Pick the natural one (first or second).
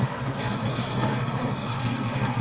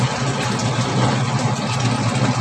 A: second